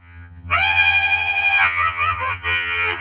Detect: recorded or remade remade